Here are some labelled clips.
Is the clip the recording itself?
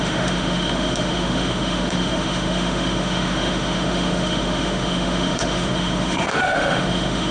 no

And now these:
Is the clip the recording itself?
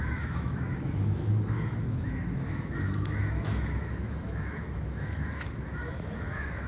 no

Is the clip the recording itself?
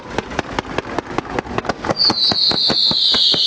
yes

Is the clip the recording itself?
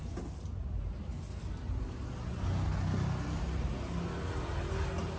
yes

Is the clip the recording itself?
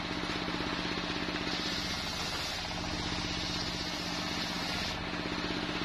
yes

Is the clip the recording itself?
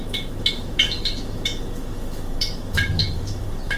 no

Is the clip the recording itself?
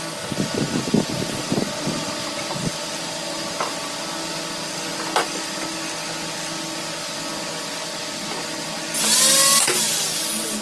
yes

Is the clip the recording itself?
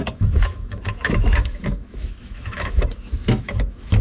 no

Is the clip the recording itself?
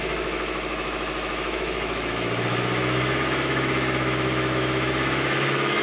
no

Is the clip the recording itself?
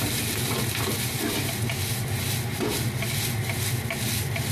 yes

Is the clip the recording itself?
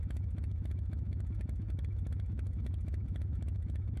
no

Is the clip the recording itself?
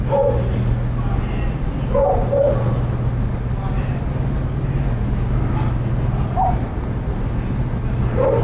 yes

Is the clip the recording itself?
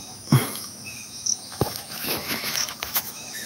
no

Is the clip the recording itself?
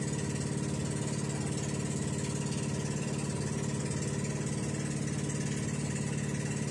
yes